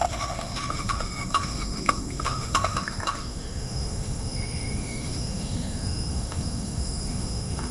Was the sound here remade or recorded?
remade